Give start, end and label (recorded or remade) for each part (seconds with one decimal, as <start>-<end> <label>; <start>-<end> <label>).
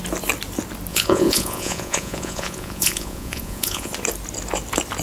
0.0-0.9 recorded; 0.9-3.9 remade; 3.9-5.0 recorded